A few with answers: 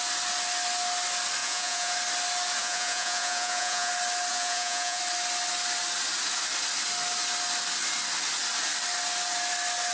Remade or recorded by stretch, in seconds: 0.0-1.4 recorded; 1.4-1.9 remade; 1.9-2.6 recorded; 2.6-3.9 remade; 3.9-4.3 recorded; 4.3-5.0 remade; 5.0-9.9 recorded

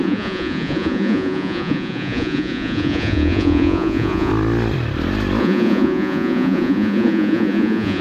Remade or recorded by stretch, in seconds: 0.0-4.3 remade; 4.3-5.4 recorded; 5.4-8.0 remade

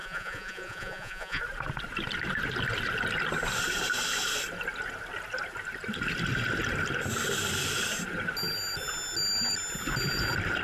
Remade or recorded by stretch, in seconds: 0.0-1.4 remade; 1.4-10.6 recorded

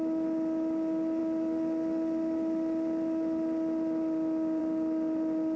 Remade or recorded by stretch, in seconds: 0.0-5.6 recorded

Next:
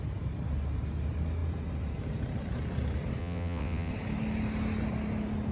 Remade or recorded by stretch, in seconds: 0.0-3.2 recorded; 3.2-3.9 remade; 3.9-5.5 recorded

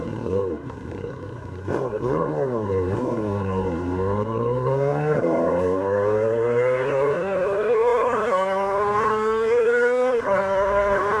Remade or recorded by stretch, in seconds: 0.0-11.2 remade

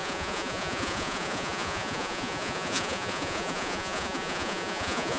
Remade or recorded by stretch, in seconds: 0.0-5.2 remade